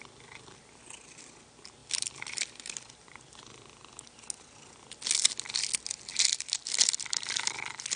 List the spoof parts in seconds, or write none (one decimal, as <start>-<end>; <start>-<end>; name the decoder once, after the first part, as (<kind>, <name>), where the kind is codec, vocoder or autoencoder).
1.8-3.9 (vocoder, BigVGAN v2); 6.1-7.5

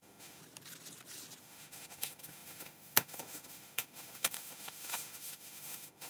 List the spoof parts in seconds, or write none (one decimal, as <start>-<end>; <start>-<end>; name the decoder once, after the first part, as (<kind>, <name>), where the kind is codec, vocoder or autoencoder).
0.0-0.4 (autoencoder, DAC-VAE); 1.4-6.1

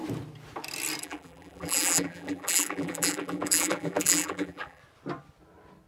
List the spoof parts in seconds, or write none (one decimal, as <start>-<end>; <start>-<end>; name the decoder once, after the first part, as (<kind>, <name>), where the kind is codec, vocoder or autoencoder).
1.0-4.8 (vocoder, BigVGAN v2)